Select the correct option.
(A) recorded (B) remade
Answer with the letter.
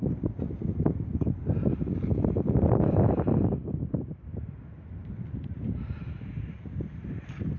A